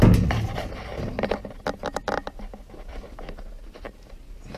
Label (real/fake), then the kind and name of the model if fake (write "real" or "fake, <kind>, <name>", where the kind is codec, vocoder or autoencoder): real